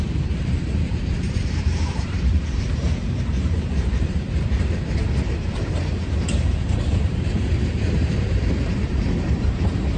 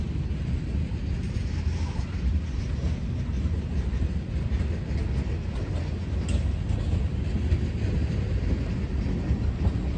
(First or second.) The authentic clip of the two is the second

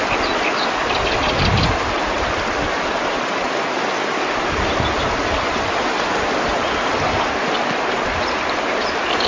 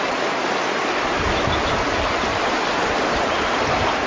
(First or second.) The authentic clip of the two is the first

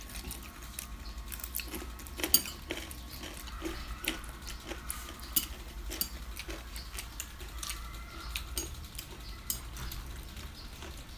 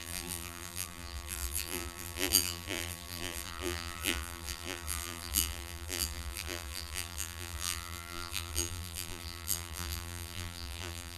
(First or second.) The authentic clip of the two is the first